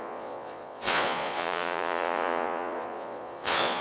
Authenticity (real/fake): fake